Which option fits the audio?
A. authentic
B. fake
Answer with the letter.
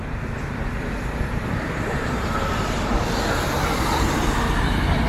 B